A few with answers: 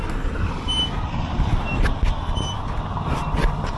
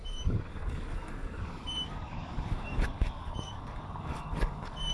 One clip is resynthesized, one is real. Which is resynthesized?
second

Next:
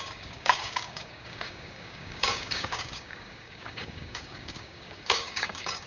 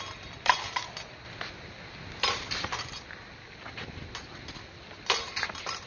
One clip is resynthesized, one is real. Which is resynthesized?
first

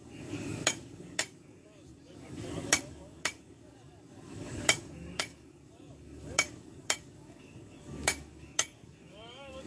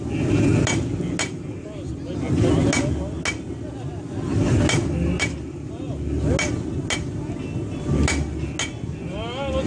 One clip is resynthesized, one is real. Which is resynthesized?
first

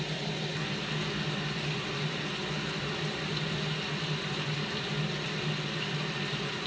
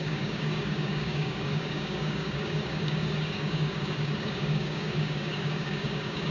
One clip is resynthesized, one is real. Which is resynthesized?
second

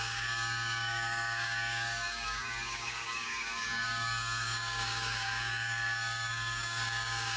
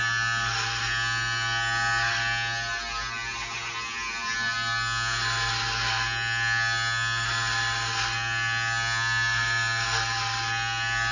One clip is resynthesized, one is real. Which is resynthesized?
first